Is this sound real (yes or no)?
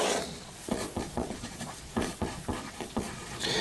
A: no